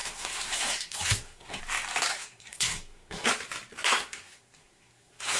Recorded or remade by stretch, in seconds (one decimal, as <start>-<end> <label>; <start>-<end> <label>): 0.0-1.6 remade; 1.6-2.1 recorded; 2.1-3.3 remade; 3.3-3.9 recorded; 3.9-5.4 remade